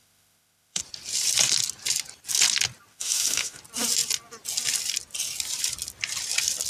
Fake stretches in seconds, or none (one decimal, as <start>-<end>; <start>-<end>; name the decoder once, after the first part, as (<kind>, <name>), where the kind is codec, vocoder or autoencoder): 0.0-0.8 (autoencoder, DAC-VAE); 2.9-3.6